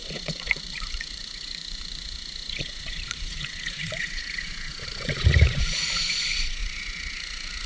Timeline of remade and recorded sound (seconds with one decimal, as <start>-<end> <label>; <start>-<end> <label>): 0.0-7.7 remade